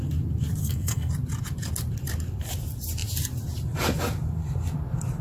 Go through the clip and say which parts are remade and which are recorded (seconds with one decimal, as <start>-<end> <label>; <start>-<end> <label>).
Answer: 0.0-0.6 recorded; 0.6-1.1 remade; 1.1-5.2 recorded